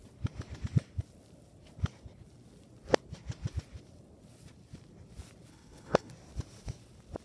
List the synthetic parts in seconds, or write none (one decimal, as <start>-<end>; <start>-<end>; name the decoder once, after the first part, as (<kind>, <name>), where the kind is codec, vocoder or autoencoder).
5.5-6.1 (codec, HILCodec)